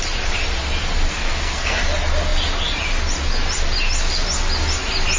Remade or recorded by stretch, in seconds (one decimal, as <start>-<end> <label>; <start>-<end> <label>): 0.0-1.1 recorded; 1.1-1.8 remade; 1.8-5.2 recorded